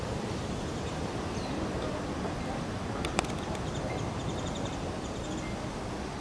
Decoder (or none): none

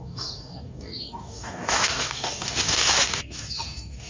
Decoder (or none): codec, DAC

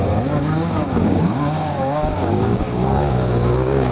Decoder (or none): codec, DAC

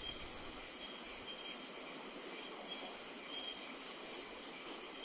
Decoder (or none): none